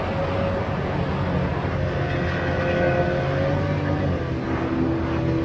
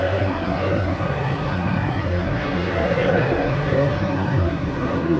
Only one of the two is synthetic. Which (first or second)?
second